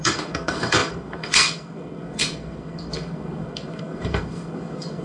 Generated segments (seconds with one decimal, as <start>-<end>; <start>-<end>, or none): 0.0-5.0